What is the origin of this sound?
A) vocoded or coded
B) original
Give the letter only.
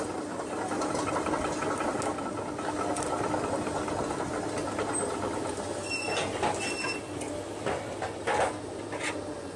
B